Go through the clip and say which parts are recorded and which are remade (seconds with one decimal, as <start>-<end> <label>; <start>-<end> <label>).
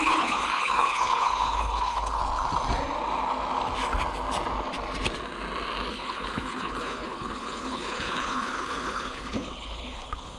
0.0-2.2 remade; 2.2-5.9 recorded; 5.9-10.4 remade